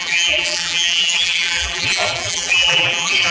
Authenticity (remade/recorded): remade